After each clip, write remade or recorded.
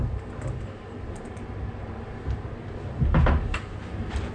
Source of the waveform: recorded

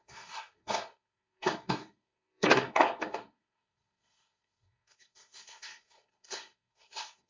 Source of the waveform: remade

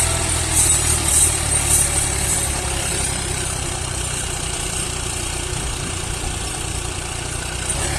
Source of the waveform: remade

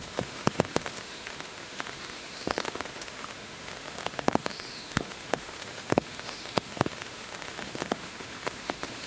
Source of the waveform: remade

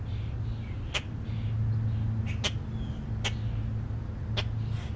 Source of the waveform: recorded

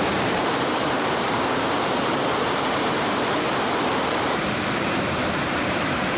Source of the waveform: remade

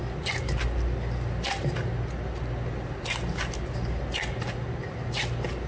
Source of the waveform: recorded